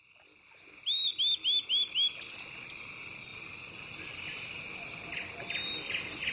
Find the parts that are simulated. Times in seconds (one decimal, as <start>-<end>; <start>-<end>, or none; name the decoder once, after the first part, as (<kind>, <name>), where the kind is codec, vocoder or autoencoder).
none